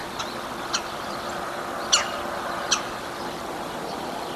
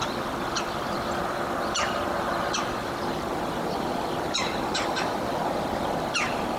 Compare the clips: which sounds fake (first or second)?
second